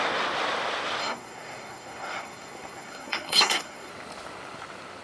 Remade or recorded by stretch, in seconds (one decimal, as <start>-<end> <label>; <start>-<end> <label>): 0.0-1.0 recorded; 1.0-3.9 remade; 3.9-5.0 recorded